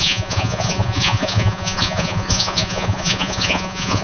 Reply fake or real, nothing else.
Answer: fake